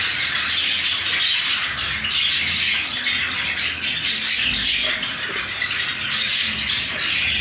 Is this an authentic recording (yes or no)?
yes